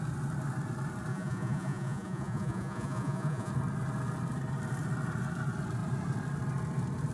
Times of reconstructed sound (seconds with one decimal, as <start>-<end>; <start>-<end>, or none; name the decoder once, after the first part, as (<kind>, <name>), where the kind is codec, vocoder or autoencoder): 1.1-3.5 (vocoder, Vocos)